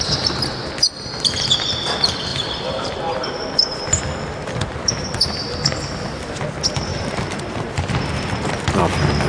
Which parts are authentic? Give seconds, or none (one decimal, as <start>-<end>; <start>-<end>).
0.0-2.3; 3.3-4.4; 5.2-6.9; 8.8-9.3